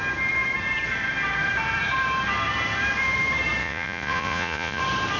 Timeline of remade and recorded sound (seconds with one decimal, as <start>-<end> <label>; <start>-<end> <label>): 0.0-3.6 recorded; 3.6-4.8 remade; 4.8-5.2 recorded